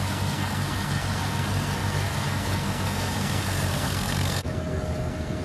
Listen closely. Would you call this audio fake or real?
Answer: fake